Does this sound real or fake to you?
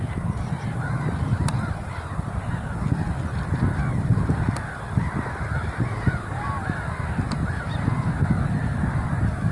real